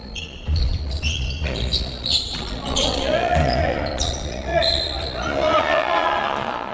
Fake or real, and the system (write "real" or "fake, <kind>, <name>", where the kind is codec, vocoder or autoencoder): fake, vocoder, Vocos